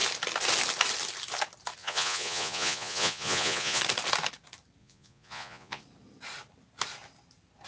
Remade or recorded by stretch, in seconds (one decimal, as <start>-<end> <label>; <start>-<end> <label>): 0.0-1.8 recorded; 1.8-3.8 remade; 3.8-4.8 recorded; 4.8-5.8 remade; 5.8-7.7 recorded